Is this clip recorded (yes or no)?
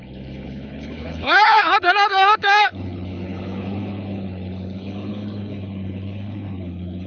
no